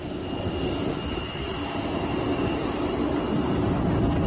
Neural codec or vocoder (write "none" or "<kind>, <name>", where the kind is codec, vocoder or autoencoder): none